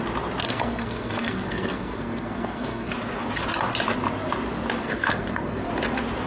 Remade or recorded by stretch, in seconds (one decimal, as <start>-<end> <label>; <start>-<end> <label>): 0.0-0.4 recorded; 0.4-2.9 remade; 2.9-4.8 recorded; 4.8-5.7 remade; 5.7-6.3 recorded